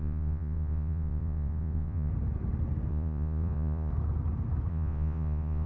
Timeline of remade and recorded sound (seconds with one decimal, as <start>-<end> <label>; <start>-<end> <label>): 0.0-2.1 remade; 2.1-2.9 recorded; 2.9-3.9 remade; 3.9-4.7 recorded; 4.7-5.7 remade